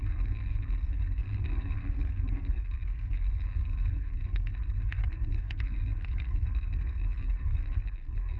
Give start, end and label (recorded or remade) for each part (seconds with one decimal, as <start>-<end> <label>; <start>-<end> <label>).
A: 0.0-8.4 remade